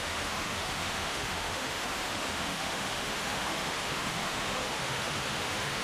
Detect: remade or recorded remade